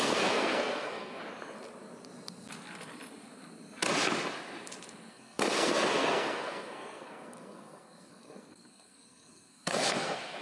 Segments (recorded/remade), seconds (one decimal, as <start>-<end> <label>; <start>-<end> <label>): 0.0-1.2 remade; 1.2-5.1 recorded; 5.1-10.4 remade